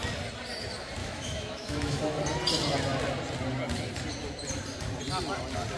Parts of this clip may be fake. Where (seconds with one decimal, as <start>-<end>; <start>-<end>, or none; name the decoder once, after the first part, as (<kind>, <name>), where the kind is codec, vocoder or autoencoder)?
1.0-2.2 (autoencoder, DAC-VAE)